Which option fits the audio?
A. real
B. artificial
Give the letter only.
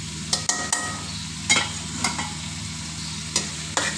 A